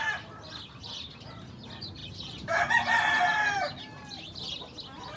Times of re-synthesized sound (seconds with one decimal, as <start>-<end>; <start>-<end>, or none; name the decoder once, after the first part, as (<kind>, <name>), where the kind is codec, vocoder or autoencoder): none